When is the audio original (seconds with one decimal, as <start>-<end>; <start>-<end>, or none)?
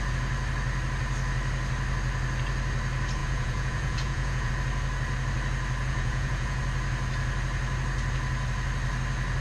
0.0-3.2; 4.5-5.8; 6.6-9.4